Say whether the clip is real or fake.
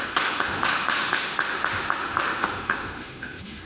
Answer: fake